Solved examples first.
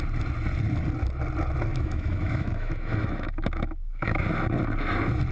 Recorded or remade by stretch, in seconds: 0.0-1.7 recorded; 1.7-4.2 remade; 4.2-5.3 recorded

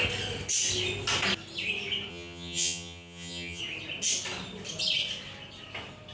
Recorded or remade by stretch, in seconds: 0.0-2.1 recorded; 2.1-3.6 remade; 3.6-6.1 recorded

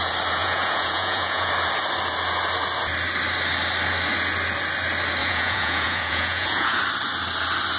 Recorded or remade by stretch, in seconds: 0.0-0.4 recorded; 0.4-1.5 remade; 1.5-5.2 recorded; 5.2-6.8 remade; 6.8-7.8 recorded

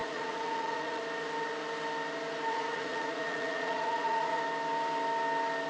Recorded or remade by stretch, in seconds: 0.0-1.0 remade; 1.0-2.5 recorded; 2.5-4.4 remade; 4.4-5.7 recorded